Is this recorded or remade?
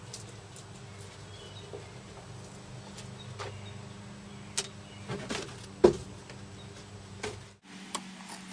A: recorded